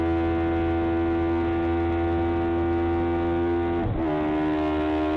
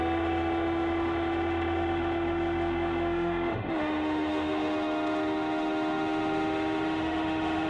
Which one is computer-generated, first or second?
second